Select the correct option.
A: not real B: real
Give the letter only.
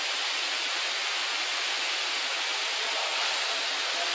B